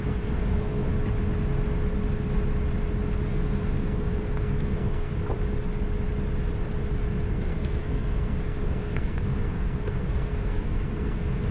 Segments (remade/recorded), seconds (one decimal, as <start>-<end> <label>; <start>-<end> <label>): 0.0-0.9 remade; 0.9-3.3 recorded; 3.3-5.1 remade; 5.1-7.3 recorded; 7.3-11.5 remade